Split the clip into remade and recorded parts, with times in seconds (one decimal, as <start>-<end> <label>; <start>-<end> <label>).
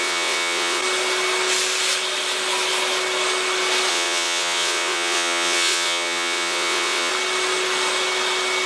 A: 0.0-0.8 remade; 0.8-3.9 recorded; 3.9-7.1 remade; 7.1-8.7 recorded